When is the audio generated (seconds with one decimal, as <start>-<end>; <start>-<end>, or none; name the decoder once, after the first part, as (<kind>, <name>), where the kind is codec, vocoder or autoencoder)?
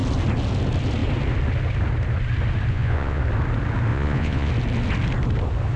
2.7-3.2 (vocoder, Vocos); 3.9-4.5